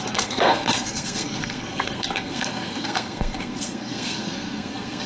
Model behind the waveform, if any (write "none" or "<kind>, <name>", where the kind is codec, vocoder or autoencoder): codec, SNAC